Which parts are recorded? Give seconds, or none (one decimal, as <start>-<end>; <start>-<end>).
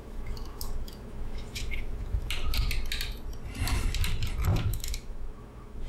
2.3-4.5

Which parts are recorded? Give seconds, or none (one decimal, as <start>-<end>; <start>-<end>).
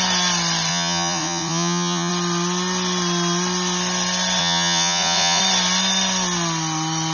0.0-0.7; 2.1-4.4; 5.4-7.1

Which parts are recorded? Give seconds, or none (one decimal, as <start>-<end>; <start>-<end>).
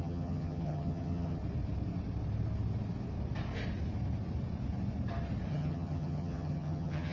1.4-5.5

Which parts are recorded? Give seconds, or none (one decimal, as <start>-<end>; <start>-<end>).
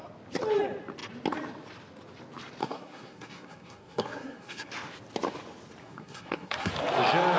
0.0-2.6; 4.7-5.8; 6.7-7.4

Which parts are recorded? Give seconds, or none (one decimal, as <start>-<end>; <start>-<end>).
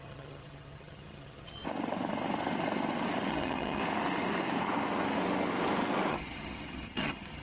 1.6-3.3; 3.8-6.1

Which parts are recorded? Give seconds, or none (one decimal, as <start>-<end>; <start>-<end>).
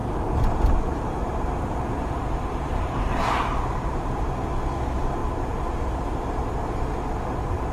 4.3-5.2; 6.9-7.7